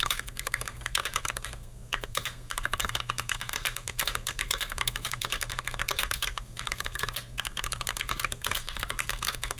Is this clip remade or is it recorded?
remade